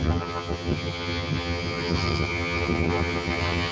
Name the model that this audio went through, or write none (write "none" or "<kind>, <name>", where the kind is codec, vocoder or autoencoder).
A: vocoder, HiFi-GAN